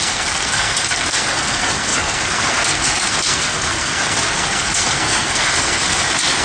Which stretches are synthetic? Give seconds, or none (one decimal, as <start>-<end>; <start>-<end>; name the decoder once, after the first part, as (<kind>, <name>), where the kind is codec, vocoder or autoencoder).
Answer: 0.0-6.4 (codec, SNAC)